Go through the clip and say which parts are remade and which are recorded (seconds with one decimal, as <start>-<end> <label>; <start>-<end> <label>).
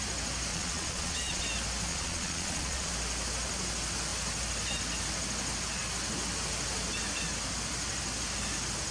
0.0-0.5 recorded; 0.5-1.4 remade; 1.4-1.9 recorded; 1.9-2.9 remade; 2.9-8.9 recorded